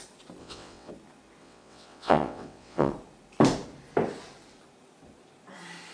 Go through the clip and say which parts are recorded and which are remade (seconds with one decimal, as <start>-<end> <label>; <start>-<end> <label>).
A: 0.0-0.4 recorded; 0.4-0.9 remade; 0.9-1.4 recorded; 1.4-2.9 remade; 2.9-5.9 recorded